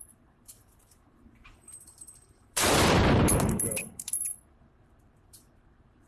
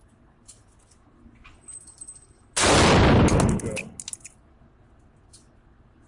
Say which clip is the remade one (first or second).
first